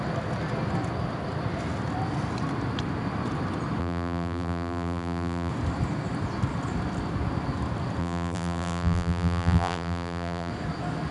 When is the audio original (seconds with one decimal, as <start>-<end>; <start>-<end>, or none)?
0.0-3.8; 5.5-8.0; 10.5-11.1